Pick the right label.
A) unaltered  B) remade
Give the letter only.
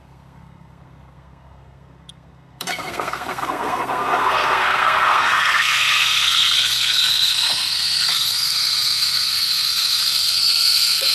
B